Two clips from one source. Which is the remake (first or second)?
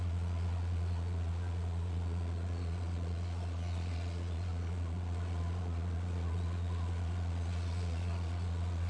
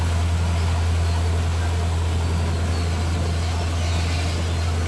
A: first